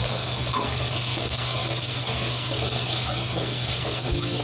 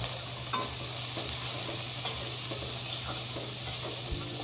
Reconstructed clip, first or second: first